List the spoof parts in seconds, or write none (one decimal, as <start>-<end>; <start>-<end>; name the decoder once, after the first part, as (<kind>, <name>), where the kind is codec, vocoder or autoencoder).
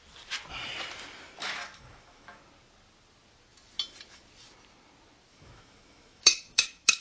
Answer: 1.4-2.4 (autoencoder, DAC-VAE); 5.3-7.0